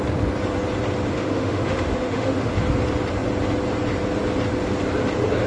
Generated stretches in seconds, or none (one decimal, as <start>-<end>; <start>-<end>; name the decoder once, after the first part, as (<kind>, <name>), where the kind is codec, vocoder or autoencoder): 1.1-2.5 (autoencoder, DAC-VAE)